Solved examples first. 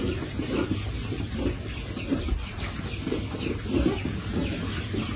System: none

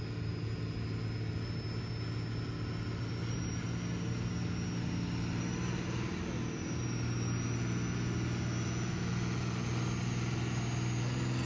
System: none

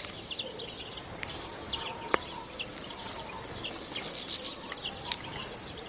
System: none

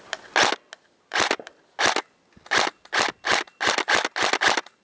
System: none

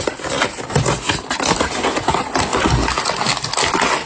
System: none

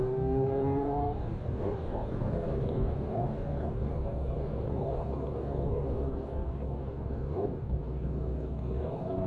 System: codec, DAC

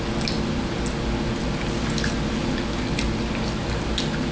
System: none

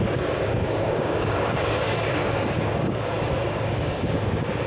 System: codec, DAC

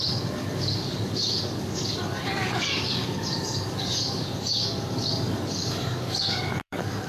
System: codec, DAC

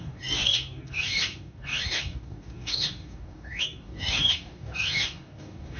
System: codec, DAC